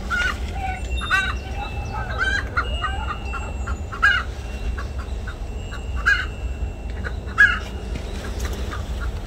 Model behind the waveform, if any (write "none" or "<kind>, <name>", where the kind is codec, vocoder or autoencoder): none